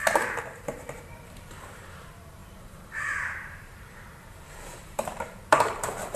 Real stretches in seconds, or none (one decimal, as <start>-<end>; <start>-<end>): none